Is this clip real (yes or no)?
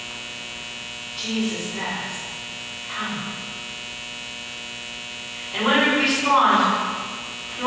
yes